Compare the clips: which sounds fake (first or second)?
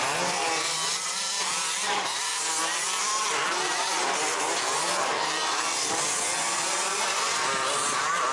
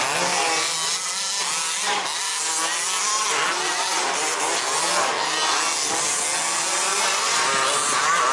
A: first